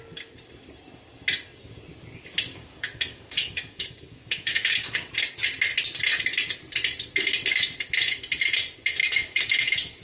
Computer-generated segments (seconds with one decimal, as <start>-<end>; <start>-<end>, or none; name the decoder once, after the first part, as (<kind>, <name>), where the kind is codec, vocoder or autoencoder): 2.5-5.1 (autoencoder, DAC-VAE); 9.0-10.0